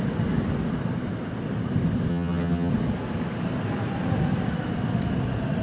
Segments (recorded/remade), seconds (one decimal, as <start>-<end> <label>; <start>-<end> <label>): 0.0-2.1 recorded; 2.1-2.7 remade; 2.7-5.6 recorded